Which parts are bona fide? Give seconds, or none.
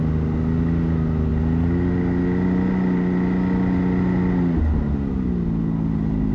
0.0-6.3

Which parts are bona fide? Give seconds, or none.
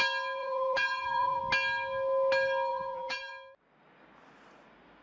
0.0-0.4; 1.4-2.7; 3.3-5.0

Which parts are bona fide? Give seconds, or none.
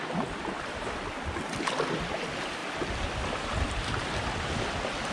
0.0-5.1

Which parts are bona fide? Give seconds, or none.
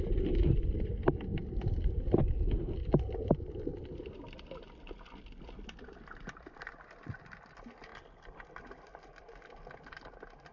0.0-10.5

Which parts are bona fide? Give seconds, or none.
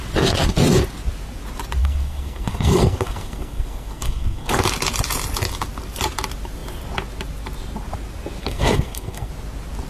0.0-1.8; 4.6-8.4; 9.3-9.9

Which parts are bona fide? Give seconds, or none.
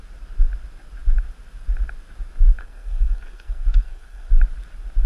0.0-2.6; 4.3-5.1